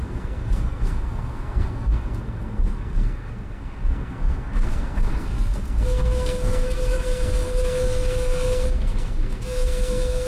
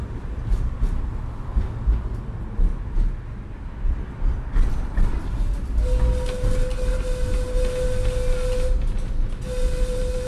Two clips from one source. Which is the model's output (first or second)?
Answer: first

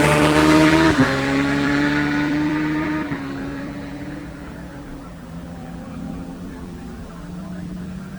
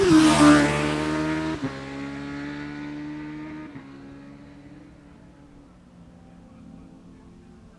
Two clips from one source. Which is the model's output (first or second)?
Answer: first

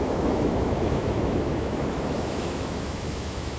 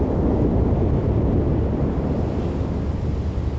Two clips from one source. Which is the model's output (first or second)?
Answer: first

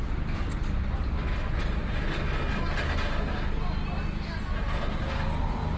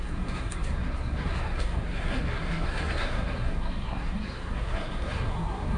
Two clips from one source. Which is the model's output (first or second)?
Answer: second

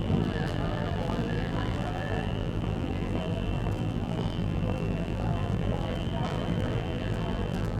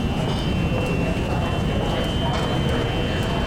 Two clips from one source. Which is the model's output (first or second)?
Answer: first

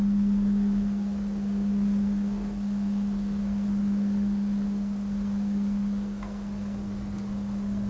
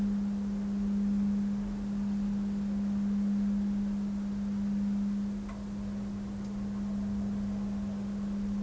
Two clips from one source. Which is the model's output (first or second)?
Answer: first